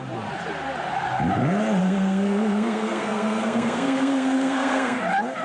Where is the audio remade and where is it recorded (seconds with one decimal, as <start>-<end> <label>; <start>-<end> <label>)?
0.0-1.8 recorded; 1.8-5.0 remade; 5.0-5.4 recorded